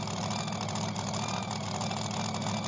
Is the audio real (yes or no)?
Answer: yes